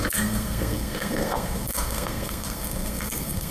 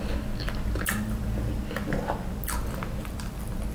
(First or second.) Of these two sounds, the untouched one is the second